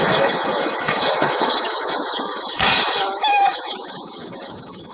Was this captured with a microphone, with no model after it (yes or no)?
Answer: no